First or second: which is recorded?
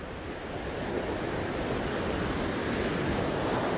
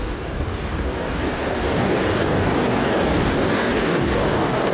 first